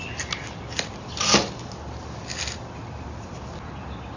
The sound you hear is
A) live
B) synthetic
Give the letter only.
A